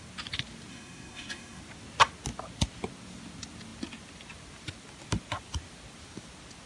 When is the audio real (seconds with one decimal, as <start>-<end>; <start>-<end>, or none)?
0.0-0.7; 1.6-6.7